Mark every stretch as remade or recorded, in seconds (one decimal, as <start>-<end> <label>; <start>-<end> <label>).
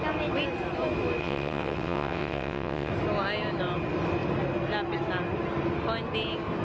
0.0-1.2 recorded; 1.2-2.9 remade; 2.9-6.6 recorded